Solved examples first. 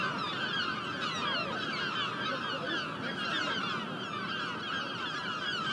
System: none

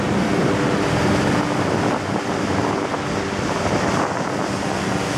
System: none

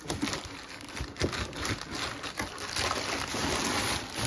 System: none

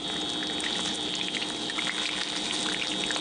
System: none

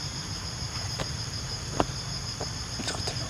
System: vocoder, BigVGAN v2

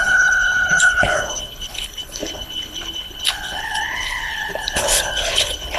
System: codec, HILCodec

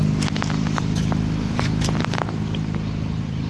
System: none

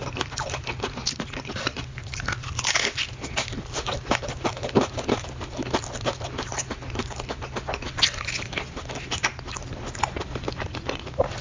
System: none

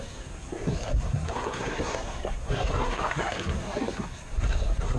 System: codec, SNAC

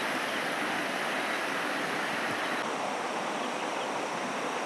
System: none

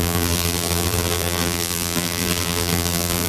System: vocoder, BigVGAN v2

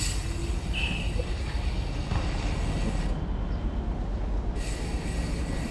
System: none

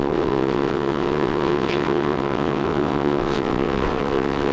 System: vocoder, WaveNeXt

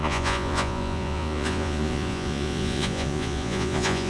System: vocoder, Vocos